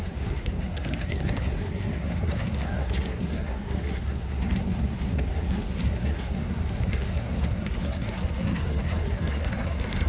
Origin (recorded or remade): remade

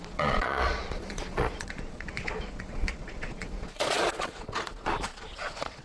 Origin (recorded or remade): remade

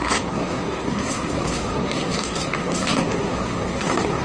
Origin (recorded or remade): remade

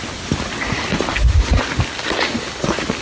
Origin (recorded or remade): recorded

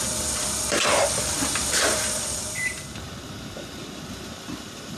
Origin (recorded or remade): remade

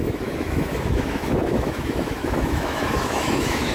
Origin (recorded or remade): remade